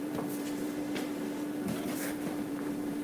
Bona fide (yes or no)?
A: no